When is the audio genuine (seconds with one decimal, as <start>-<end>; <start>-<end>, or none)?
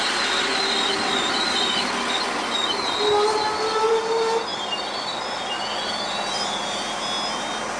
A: 0.0-7.8